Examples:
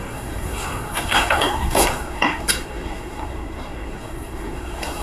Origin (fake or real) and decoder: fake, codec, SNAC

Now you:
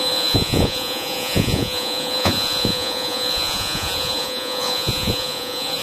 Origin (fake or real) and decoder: fake, vocoder, Vocos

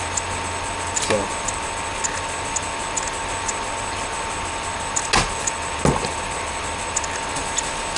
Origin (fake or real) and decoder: real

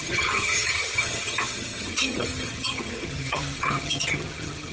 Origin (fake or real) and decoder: fake, vocoder, HiFi-GAN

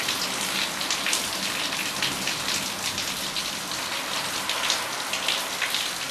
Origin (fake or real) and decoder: real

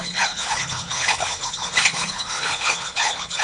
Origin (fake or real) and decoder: fake, codec, HILCodec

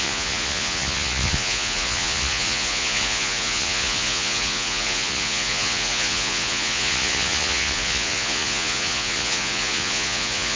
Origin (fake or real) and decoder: fake, vocoder, Vocos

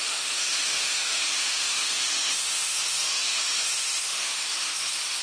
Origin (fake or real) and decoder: fake, autoencoder, DAC-VAE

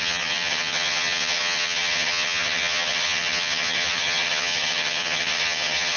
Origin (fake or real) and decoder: fake, vocoder, HiFi-GAN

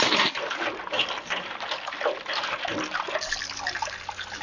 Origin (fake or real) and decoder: real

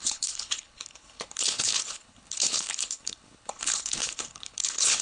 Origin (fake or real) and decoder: fake, codec, HILCodec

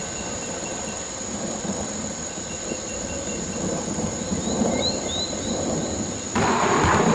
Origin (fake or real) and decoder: fake, vocoder, BigVGAN v2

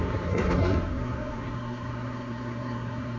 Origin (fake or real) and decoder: fake, codec, SNAC